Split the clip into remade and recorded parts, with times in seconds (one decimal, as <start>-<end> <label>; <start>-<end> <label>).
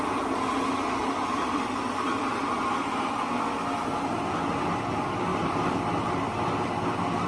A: 0.0-1.0 recorded; 1.0-2.6 remade; 2.6-5.3 recorded; 5.3-5.8 remade; 5.8-7.3 recorded